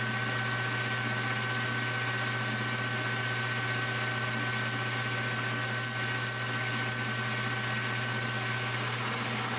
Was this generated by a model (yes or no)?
no